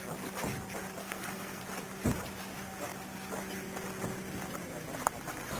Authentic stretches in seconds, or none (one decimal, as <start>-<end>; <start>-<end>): 0.0-1.0; 1.6-5.6